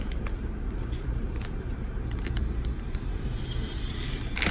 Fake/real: fake